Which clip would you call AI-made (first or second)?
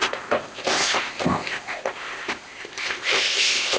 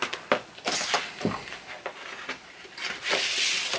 first